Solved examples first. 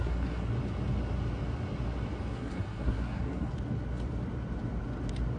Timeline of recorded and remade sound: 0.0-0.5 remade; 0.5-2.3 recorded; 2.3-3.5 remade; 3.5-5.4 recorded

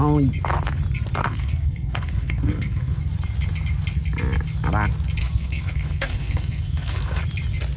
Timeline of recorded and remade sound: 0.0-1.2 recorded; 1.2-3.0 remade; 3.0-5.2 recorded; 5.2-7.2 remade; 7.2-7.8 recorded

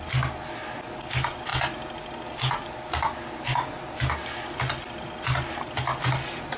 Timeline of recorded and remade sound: 0.0-6.6 recorded

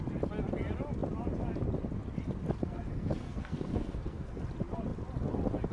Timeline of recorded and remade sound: 0.0-2.6 recorded; 2.6-4.4 remade; 4.4-5.7 recorded

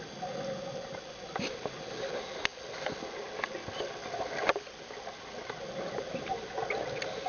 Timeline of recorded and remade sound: 0.0-7.3 recorded